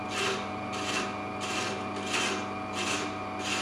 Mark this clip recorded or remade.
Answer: recorded